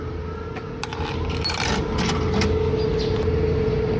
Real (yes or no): yes